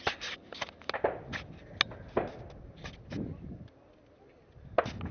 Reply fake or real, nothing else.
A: real